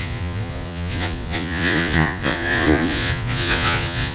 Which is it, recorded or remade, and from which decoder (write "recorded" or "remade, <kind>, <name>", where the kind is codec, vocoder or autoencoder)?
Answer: remade, vocoder, Vocos